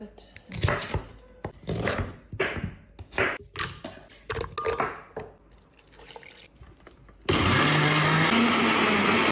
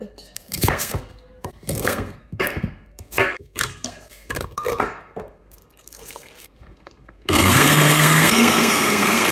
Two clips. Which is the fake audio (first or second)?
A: second